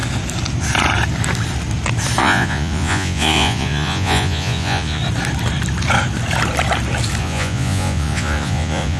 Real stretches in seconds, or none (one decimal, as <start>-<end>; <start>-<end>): 0.0-2.2; 5.0-7.2

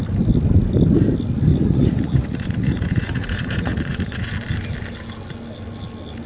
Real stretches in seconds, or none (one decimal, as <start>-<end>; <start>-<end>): 0.0-1.5; 4.3-6.3

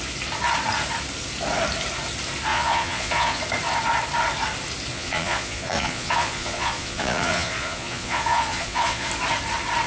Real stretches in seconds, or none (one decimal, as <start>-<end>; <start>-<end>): 0.0-2.5; 3.4-4.9; 9.1-9.9

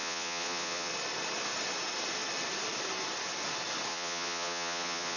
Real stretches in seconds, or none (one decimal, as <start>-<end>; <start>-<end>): 0.9-3.9

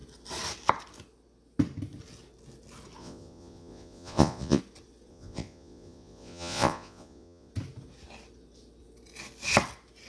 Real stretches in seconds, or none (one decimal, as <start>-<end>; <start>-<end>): 0.0-3.0; 4.6-5.1; 7.5-10.1

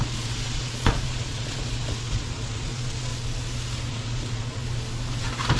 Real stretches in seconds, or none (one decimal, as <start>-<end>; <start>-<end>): 3.1-3.9; 4.6-5.6

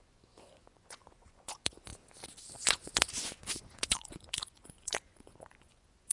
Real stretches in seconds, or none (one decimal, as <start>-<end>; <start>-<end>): 1.9-2.5

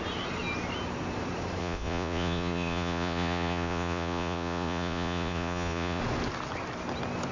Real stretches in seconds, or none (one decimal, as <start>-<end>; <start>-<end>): 0.0-1.6; 6.0-7.3